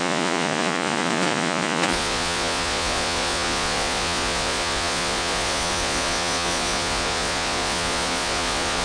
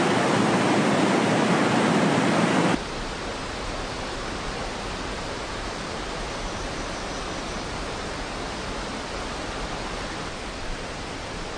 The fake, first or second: first